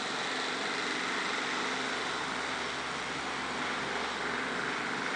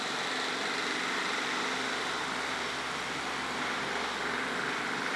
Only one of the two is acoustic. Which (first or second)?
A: first